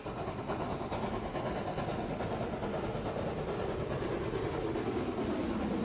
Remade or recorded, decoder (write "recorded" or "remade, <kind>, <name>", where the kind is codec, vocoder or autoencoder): recorded